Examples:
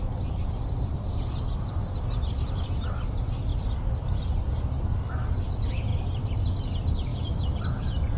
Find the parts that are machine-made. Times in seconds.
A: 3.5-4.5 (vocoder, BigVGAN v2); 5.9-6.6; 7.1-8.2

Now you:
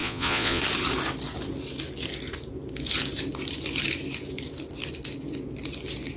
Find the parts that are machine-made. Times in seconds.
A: 0.0-0.6 (vocoder, Vocos)

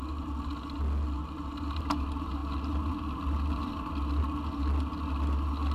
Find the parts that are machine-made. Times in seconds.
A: none